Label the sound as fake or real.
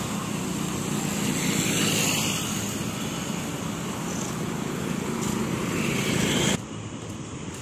real